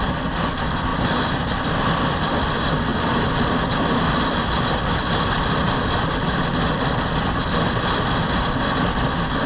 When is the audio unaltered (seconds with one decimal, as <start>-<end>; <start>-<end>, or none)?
0.0-0.9; 2.1-9.5